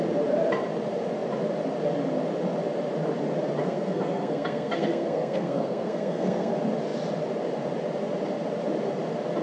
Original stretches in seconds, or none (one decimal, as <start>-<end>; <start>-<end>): 0.0-3.6; 6.5-9.4